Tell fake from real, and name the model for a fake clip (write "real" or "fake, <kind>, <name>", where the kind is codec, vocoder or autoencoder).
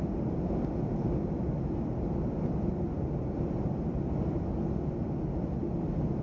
real